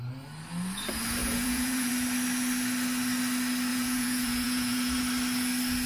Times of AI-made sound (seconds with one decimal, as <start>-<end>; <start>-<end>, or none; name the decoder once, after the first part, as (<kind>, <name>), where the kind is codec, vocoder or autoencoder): 1.2-1.9 (vocoder, Vocos); 3.7-5.0